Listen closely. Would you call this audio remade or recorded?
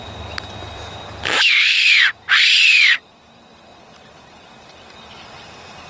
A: remade